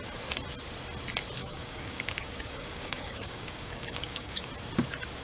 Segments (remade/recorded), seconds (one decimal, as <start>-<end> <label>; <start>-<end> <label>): 0.0-1.4 recorded; 1.4-4.5 remade; 4.5-5.2 recorded